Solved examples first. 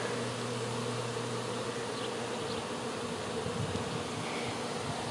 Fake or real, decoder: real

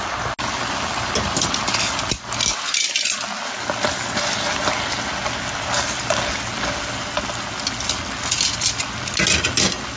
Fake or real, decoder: real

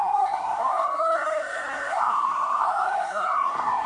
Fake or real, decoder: fake, codec, SNAC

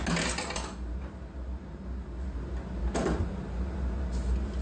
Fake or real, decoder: real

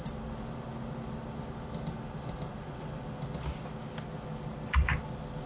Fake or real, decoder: real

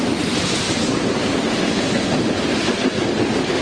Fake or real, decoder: real